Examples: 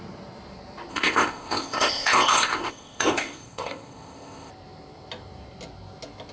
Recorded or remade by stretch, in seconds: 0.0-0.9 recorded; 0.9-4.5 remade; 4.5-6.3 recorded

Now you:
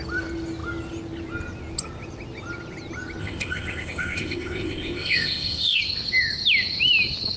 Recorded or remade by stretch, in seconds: 0.0-3.2 recorded; 3.2-5.8 remade; 5.8-7.4 recorded

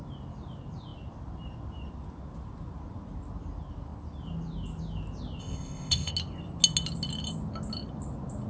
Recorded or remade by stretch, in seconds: 0.0-5.4 recorded; 5.4-6.1 remade; 6.1-8.5 recorded